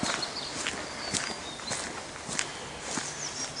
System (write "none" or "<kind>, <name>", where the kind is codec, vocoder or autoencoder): none